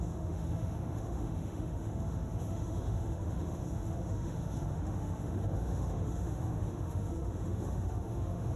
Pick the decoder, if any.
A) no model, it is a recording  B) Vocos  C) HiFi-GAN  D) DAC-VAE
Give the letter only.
D